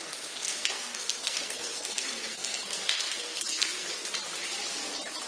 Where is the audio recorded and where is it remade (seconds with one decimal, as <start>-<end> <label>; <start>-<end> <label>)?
0.0-3.9 remade; 3.9-5.3 recorded